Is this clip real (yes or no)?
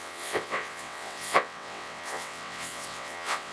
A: no